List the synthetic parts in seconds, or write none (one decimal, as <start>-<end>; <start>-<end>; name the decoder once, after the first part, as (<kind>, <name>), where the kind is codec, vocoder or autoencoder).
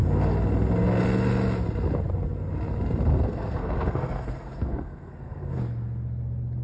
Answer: 3.1-5.6 (codec, SNAC)